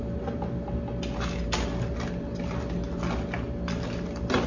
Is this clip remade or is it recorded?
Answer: recorded